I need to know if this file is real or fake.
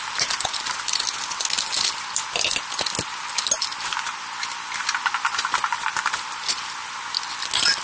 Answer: real